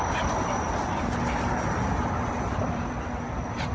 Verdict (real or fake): real